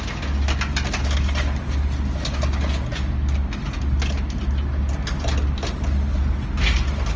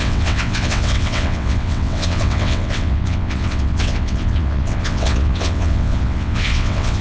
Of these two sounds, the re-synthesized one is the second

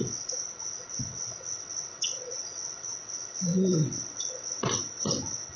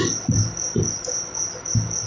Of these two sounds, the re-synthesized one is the first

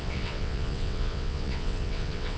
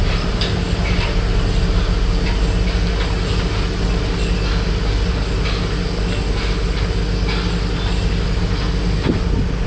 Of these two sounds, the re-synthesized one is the first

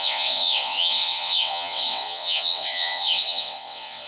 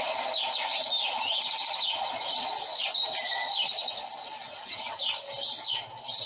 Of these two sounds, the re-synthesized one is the first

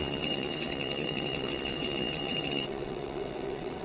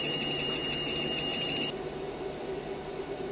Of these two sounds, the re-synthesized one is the first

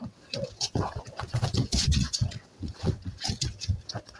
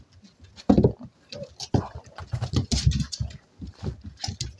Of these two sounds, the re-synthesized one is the first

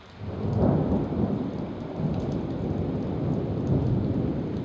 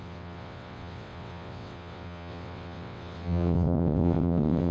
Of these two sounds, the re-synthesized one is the second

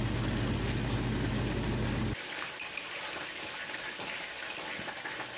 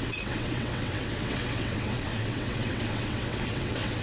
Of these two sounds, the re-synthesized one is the second